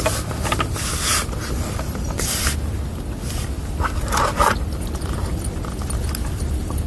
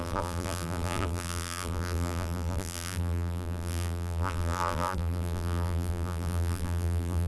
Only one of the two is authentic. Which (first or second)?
first